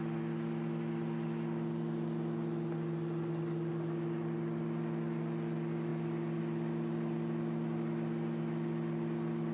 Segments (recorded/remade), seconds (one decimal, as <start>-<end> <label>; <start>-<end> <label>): 0.0-9.5 recorded